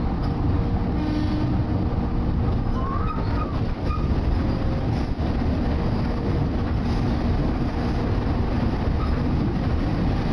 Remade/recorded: recorded